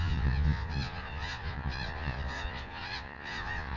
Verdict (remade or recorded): remade